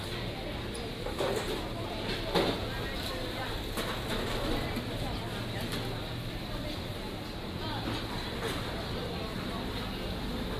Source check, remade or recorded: recorded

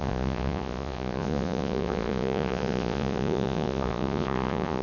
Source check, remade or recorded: remade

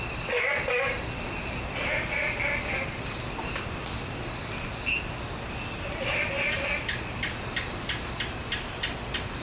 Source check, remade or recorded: recorded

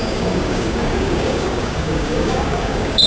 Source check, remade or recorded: remade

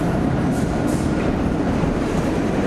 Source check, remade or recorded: remade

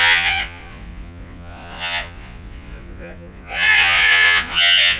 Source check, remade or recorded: remade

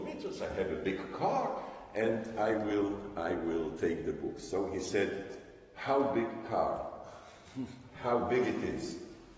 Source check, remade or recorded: recorded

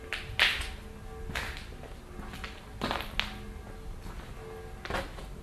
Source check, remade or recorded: recorded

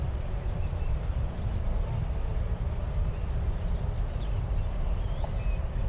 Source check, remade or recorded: recorded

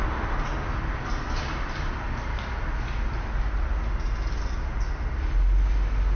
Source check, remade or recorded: recorded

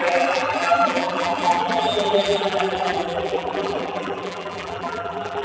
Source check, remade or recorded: remade